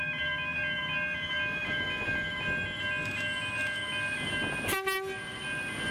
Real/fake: real